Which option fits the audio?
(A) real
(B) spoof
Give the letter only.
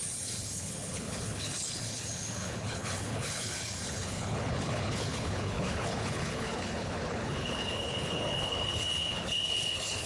B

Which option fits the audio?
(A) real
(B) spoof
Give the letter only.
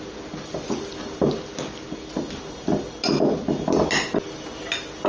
A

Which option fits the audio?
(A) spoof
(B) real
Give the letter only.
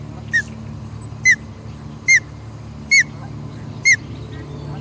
B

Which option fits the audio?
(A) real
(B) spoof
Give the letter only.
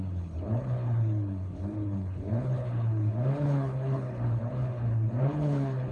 B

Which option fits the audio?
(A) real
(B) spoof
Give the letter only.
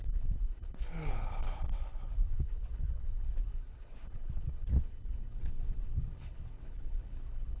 B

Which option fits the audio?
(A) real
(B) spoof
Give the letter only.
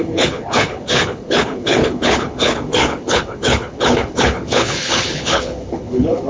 B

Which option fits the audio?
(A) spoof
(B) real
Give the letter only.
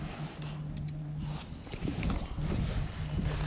B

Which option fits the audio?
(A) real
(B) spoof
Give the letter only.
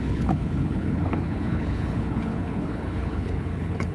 B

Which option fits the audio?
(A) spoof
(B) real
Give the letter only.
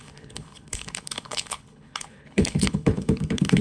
A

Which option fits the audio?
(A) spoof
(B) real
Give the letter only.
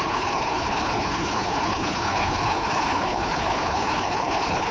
A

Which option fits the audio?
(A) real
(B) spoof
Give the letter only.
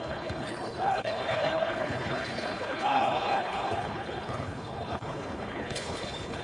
B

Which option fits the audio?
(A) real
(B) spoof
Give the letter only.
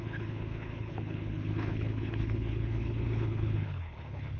B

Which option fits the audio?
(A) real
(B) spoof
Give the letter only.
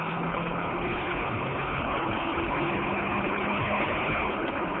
B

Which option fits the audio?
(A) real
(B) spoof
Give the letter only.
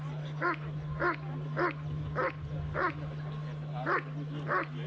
A